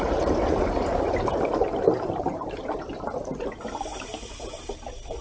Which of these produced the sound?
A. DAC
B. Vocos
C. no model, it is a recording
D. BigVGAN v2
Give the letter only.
D